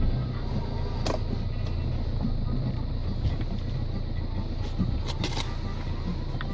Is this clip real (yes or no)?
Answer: yes